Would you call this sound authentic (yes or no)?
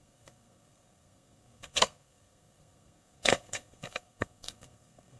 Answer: no